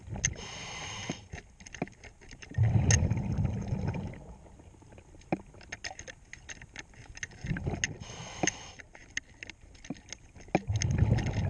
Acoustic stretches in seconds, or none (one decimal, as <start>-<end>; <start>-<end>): 0.0-11.5